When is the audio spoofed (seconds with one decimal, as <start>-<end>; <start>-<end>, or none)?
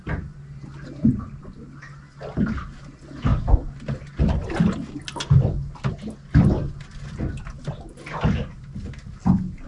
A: none